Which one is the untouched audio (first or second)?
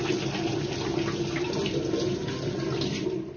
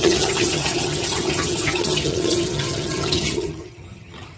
first